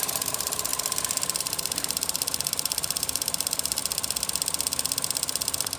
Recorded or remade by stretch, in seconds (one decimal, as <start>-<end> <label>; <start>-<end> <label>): 0.0-0.7 remade; 0.7-1.4 recorded; 1.4-3.8 remade; 3.8-5.8 recorded